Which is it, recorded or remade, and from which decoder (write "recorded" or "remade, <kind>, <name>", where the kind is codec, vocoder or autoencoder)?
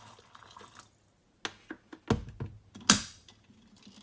recorded